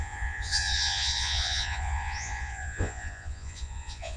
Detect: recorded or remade remade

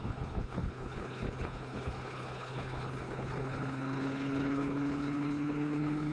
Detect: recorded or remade remade